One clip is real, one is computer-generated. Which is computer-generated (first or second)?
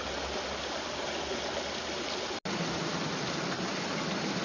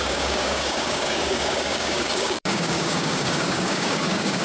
second